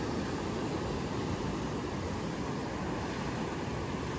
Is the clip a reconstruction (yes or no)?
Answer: no